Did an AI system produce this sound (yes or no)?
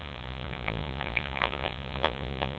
yes